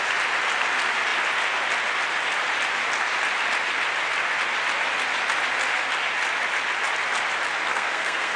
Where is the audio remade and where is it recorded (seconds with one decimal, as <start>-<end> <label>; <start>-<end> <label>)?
0.0-7.7 recorded; 7.7-8.4 remade